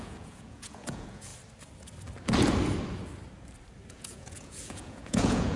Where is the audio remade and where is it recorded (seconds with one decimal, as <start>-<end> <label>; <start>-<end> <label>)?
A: 0.0-1.3 remade; 1.3-3.9 recorded; 3.9-5.6 remade